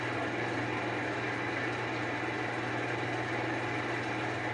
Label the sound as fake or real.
real